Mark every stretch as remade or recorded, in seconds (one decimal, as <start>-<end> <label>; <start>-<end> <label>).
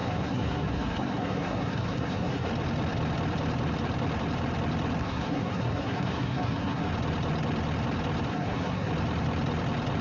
0.0-2.5 remade; 2.5-5.0 recorded; 5.0-6.9 remade; 6.9-8.3 recorded; 8.3-8.9 remade; 8.9-10.0 recorded